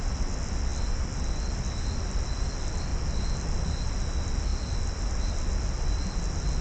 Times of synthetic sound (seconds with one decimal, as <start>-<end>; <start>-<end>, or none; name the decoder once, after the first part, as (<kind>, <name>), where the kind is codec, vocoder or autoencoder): none